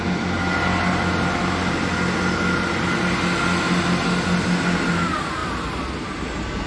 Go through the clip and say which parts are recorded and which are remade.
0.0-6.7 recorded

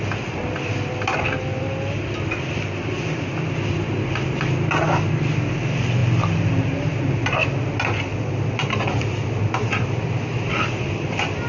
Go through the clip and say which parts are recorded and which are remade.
0.0-11.5 recorded

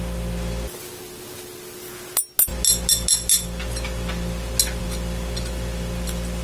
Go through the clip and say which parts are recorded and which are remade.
0.0-6.4 recorded

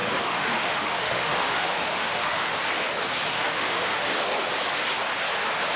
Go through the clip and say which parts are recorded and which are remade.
0.0-2.5 remade; 2.5-3.3 recorded; 3.3-4.1 remade; 4.1-5.8 recorded

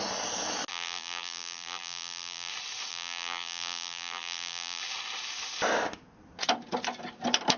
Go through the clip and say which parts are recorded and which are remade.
0.0-0.7 recorded; 0.7-2.5 remade; 2.5-2.9 recorded; 2.9-4.8 remade; 4.8-7.6 recorded

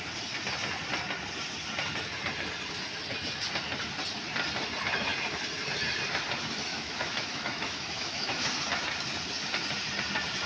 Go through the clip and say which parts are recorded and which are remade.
0.0-6.7 recorded; 6.7-8.5 remade; 8.5-10.5 recorded

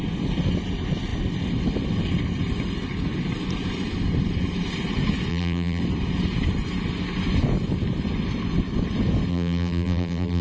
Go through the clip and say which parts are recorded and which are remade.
0.0-5.3 recorded; 5.3-5.8 remade; 5.8-9.3 recorded; 9.3-10.4 remade